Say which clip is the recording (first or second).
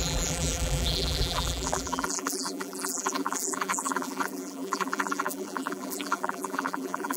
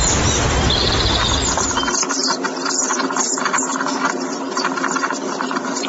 second